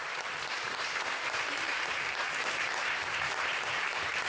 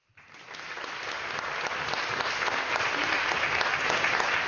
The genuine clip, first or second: second